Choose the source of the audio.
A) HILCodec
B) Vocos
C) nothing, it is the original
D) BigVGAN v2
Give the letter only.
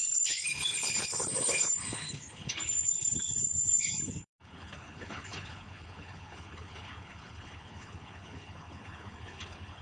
A